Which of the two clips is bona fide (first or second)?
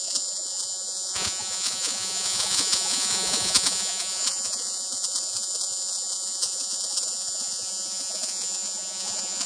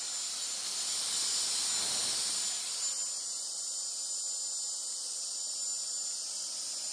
second